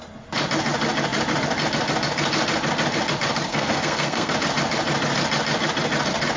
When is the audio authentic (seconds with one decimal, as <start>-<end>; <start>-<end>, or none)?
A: 0.0-3.5; 4.3-6.4